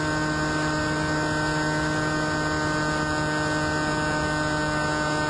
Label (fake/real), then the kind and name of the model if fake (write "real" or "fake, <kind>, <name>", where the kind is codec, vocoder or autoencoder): real